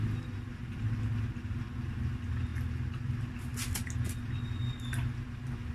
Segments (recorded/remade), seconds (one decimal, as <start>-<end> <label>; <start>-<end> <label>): 0.0-5.7 recorded